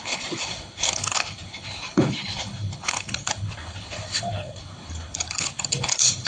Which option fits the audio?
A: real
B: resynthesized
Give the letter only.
B